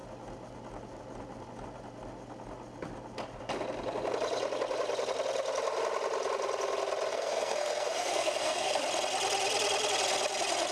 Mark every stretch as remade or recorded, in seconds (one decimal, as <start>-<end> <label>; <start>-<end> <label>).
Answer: 0.0-7.1 recorded; 7.1-8.8 remade; 8.8-10.7 recorded